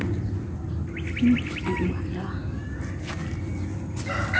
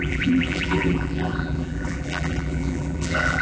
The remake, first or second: second